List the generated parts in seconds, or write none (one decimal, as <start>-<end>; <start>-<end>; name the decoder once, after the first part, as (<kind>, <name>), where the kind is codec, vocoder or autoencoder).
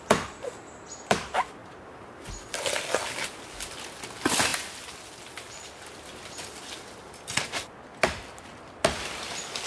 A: 1.6-2.4 (vocoder, BigVGAN v2)